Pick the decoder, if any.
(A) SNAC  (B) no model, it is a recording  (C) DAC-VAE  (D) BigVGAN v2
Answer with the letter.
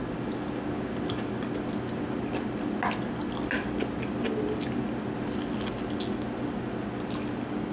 B